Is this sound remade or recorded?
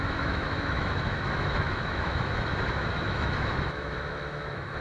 remade